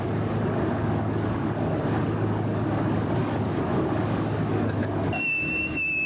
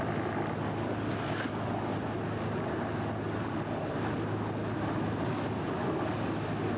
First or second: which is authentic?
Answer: second